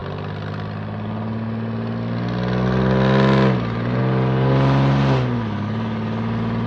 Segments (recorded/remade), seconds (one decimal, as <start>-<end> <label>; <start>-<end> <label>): 0.0-6.7 recorded